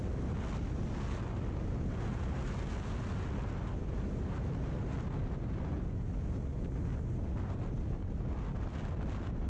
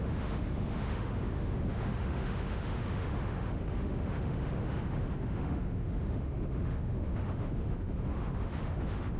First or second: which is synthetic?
second